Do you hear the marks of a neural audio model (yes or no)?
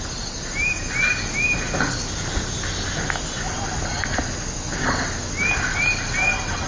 no